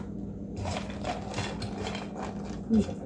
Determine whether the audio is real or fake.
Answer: real